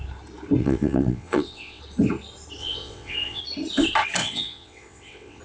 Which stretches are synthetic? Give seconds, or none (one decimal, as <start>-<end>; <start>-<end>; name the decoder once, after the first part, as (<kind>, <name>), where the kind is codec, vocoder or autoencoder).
0.6-1.8 (vocoder, WaveNeXt); 2.6-3.4; 4.2-5.4